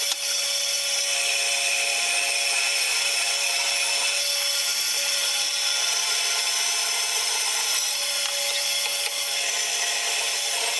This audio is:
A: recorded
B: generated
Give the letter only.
A